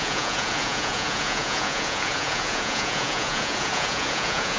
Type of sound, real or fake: fake